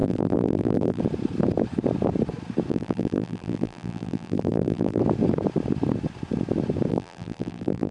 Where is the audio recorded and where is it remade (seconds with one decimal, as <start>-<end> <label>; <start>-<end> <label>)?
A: 0.0-1.0 remade; 1.0-2.7 recorded; 2.7-5.0 remade; 5.0-6.9 recorded; 6.9-7.9 remade